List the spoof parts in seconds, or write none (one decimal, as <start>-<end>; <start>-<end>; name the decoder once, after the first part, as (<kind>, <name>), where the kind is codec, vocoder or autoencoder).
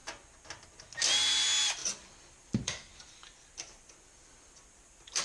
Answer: 1.8-5.2 (vocoder, BigVGAN v2)